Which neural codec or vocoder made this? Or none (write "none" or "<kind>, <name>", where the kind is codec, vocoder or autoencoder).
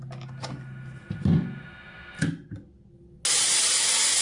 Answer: none